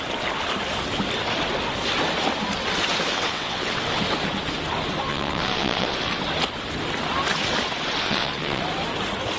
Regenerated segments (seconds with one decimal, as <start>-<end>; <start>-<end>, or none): 3.1-3.8; 5.1-6.2; 8.0-8.6